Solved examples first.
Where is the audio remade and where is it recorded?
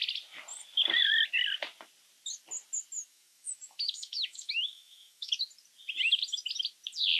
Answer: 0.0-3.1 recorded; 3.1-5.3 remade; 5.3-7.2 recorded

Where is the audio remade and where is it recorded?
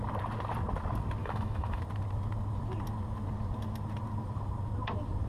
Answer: 0.0-1.2 recorded; 1.2-1.8 remade; 1.8-5.3 recorded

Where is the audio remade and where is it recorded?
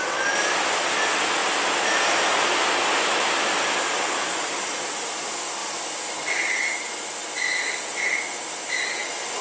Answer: 0.0-1.4 recorded; 1.4-2.7 remade; 2.7-9.4 recorded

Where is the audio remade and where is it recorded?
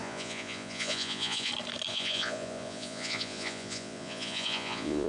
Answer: 0.0-1.5 remade; 1.5-1.9 recorded; 1.9-5.1 remade